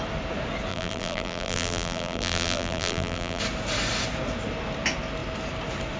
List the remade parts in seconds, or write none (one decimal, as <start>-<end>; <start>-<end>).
0.7-3.4